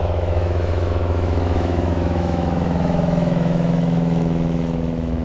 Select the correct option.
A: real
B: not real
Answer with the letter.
B